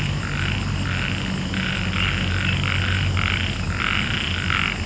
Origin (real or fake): real